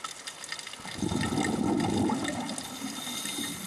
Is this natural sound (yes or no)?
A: yes